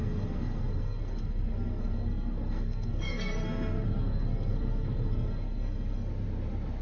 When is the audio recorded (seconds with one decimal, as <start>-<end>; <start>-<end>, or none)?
6.1-6.8